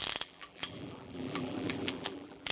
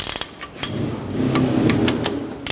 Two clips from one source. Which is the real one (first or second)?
second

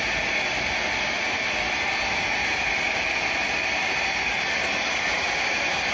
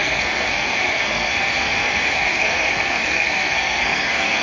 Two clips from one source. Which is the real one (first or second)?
first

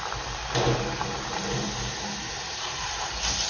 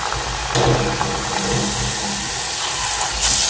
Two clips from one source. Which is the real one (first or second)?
second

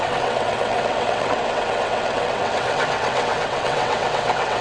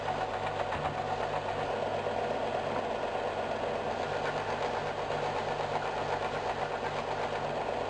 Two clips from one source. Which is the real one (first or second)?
second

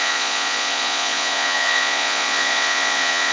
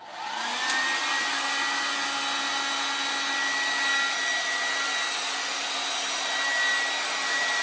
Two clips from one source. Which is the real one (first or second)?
second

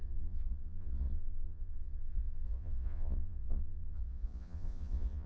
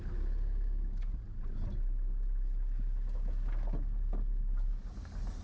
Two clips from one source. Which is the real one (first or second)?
second